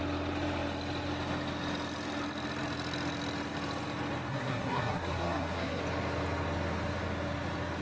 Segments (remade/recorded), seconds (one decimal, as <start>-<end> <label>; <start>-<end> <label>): 0.0-4.3 recorded; 4.3-5.8 remade; 5.8-7.8 recorded